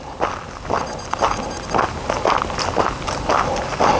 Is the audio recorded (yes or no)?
yes